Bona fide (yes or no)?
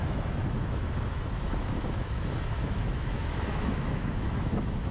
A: no